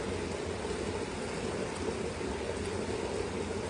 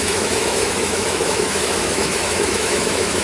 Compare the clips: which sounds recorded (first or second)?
first